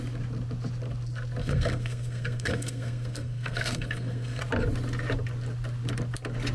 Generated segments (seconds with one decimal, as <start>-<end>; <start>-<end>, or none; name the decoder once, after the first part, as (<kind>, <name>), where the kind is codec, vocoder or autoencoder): 1.4-4.4 (codec, SNAC)